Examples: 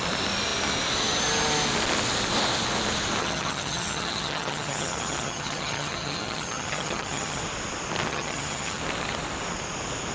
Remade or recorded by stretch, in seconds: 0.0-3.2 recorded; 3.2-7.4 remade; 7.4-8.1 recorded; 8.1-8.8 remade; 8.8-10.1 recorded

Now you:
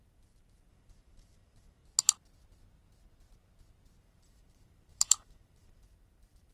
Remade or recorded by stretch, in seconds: 0.0-1.8 remade; 1.8-4.0 recorded; 4.0-6.5 remade

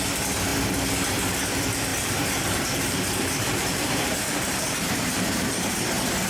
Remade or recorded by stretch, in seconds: 0.0-1.9 recorded; 1.9-5.7 remade; 5.7-6.3 recorded